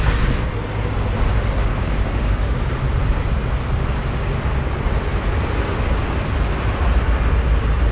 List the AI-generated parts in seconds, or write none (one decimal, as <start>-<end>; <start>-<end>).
1.7-2.6